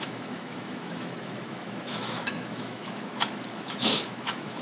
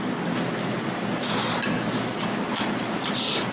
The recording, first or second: second